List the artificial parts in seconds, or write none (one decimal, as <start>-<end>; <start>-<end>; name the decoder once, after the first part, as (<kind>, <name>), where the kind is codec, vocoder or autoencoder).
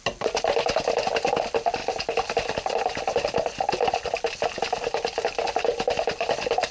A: none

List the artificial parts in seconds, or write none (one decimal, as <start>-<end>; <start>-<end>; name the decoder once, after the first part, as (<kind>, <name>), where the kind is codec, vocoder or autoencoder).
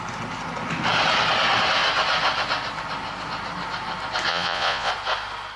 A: 4.3-4.9 (vocoder, Vocos)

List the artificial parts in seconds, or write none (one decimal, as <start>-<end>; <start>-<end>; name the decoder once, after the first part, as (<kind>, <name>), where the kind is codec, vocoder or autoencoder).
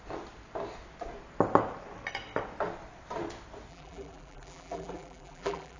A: 3.7-5.8 (vocoder, BigVGAN v2)